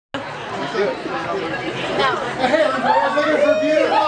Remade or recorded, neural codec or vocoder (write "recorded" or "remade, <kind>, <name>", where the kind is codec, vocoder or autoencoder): recorded